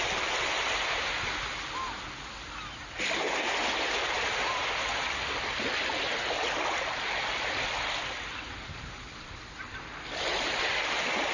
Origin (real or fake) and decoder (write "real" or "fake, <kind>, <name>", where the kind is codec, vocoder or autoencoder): real